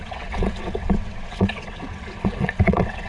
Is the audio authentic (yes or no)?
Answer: no